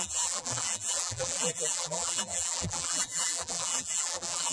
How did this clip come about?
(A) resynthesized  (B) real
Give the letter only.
A